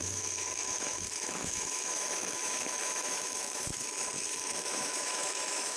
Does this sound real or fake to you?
fake